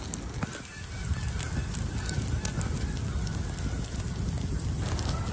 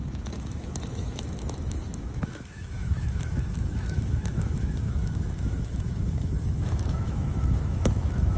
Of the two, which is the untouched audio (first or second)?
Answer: first